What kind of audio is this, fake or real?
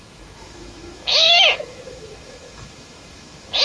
fake